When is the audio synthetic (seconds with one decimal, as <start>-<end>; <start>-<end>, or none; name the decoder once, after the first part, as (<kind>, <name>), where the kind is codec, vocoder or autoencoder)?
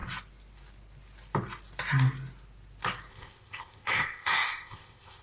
3.1-5.2 (codec, ZipCodec)